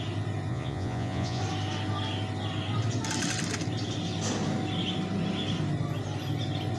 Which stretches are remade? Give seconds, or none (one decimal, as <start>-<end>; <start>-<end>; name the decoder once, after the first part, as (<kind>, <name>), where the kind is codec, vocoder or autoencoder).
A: 0.5-1.4 (vocoder, Vocos)